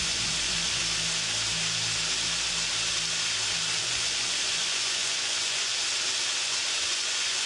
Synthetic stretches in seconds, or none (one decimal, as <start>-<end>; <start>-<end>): 0.0-0.8; 3.8-5.7; 6.4-7.5